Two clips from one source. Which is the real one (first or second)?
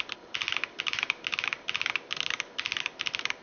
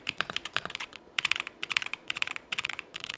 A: first